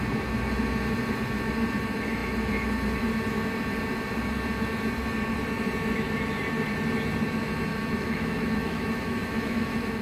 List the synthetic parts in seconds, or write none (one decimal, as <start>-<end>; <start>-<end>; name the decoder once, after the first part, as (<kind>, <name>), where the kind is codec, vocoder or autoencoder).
7.7-10.0 (autoencoder, DAC-VAE)